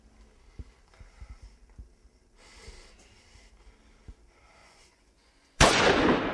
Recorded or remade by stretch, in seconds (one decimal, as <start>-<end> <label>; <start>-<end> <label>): 0.0-4.6 recorded; 4.6-5.8 remade; 5.8-6.3 recorded